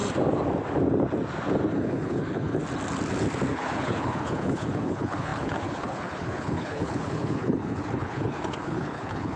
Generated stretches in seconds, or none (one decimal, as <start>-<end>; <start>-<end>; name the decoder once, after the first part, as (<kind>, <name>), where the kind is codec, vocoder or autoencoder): 1.7-2.6 (codec, HILCodec); 3.5-9.4